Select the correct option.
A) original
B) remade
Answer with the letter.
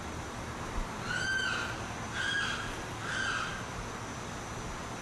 A